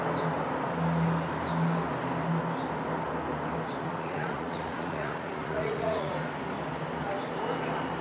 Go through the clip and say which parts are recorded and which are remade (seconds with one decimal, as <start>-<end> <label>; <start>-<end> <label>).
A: 0.0-3.8 recorded; 3.8-6.1 remade; 6.1-8.0 recorded